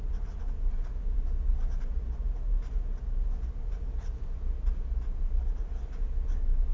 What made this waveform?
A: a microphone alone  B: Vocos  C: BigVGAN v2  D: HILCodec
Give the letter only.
A